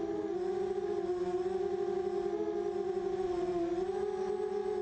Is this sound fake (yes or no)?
no